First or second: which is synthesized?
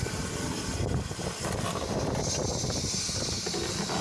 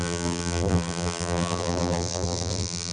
second